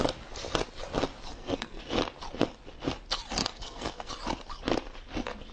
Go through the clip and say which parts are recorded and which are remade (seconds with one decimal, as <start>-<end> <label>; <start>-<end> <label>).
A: 0.0-1.3 recorded; 1.3-1.8 remade; 1.8-3.4 recorded; 3.4-4.1 remade; 4.1-5.5 recorded